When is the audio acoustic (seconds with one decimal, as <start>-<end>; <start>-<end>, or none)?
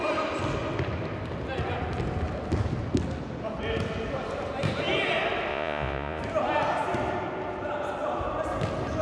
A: 0.0-5.5; 6.2-9.0